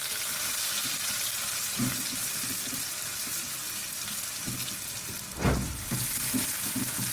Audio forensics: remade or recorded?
recorded